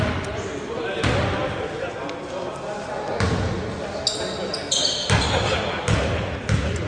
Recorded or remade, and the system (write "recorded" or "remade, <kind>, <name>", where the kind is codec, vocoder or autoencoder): recorded